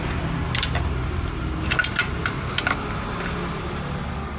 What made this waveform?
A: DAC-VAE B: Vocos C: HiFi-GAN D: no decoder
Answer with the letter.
D